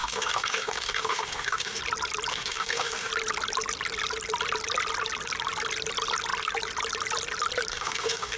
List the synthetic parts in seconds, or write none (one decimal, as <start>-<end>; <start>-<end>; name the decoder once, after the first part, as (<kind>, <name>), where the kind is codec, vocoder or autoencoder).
0.0-1.8 (codec, DAC); 2.3-3.1; 7.7-8.4